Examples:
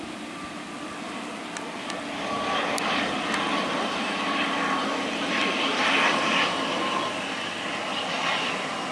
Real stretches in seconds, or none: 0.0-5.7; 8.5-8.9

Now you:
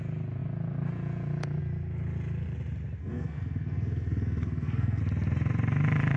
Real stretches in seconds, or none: 0.0-3.0; 5.0-6.2

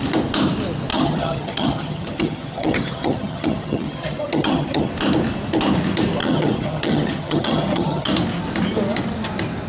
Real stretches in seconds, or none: 0.0-0.9; 4.9-6.2; 8.1-9.7